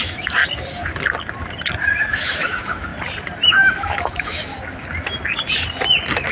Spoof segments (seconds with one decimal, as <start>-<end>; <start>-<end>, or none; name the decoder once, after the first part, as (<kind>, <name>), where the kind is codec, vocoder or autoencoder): 0.0-0.4 (autoencoder, DAC-VAE); 2.0-2.9; 3.5-4.5